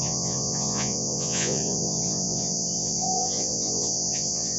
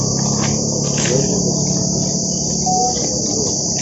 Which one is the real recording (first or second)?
second